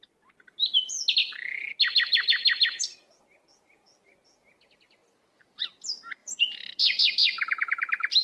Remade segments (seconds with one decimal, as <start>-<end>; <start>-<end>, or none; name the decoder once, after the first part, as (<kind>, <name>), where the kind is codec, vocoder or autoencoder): 6.2-6.7 (vocoder, BigVGAN v2)